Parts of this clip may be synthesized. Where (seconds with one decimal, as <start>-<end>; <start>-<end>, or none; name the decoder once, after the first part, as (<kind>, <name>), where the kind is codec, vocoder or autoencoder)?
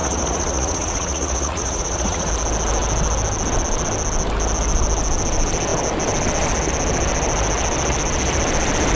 0.0-2.3 (vocoder, Vocos)